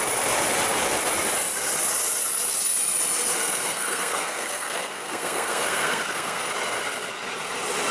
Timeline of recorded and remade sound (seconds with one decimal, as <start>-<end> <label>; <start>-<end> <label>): 0.0-3.3 recorded; 3.3-6.4 remade; 6.4-7.9 recorded